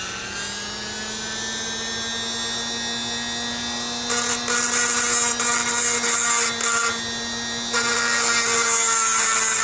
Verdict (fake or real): real